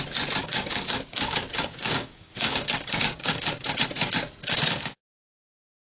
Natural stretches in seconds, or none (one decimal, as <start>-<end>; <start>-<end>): 0.0-0.4; 3.7-4.4; 5.0-5.8